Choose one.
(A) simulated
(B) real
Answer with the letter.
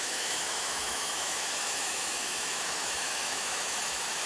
A